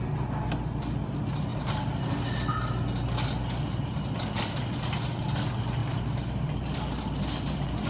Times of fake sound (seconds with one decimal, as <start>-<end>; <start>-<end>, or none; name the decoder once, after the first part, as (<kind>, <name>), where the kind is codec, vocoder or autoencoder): 1.5-2.0 (vocoder, BigVGAN v2); 5.8-6.8